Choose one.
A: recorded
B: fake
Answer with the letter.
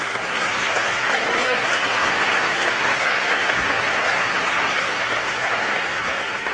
B